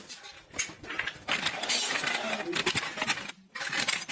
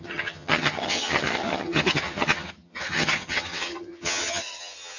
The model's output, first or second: second